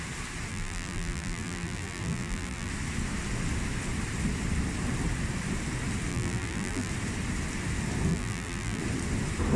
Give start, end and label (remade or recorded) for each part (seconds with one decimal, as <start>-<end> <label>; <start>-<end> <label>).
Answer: 0.0-0.5 recorded; 0.5-2.7 remade; 2.7-6.1 recorded; 6.1-6.9 remade; 6.9-8.1 recorded; 8.1-8.8 remade; 8.8-9.6 recorded